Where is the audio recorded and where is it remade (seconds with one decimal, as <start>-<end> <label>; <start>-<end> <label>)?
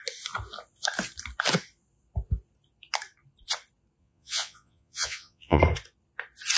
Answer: 0.0-4.0 recorded; 4.0-5.6 remade; 5.6-6.6 recorded